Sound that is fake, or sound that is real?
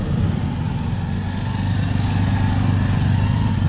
real